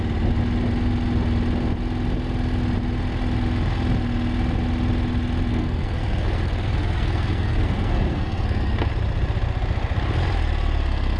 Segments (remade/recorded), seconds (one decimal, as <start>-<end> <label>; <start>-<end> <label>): 0.0-5.5 recorded; 5.5-8.9 remade; 8.9-11.2 recorded